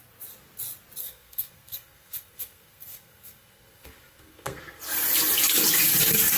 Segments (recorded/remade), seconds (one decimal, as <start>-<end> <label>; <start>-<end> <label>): 0.0-1.0 recorded; 1.0-4.8 remade; 4.8-6.4 recorded